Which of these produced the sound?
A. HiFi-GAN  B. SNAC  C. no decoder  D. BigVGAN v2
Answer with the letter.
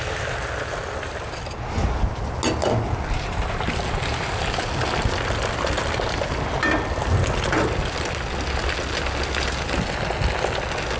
C